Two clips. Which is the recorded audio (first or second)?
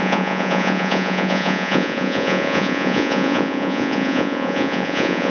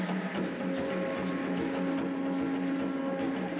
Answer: second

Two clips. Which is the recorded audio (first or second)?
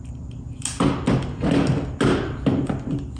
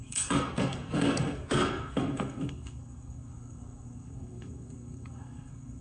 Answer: first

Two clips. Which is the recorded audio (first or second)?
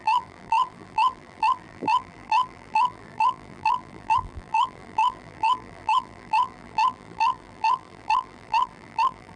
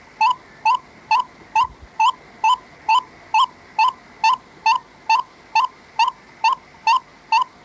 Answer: second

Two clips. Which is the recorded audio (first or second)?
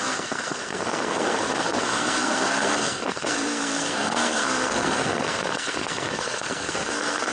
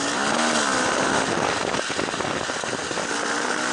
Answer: second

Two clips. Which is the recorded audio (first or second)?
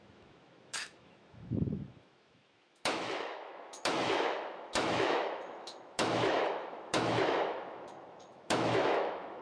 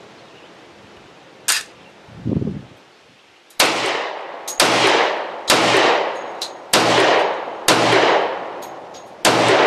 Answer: second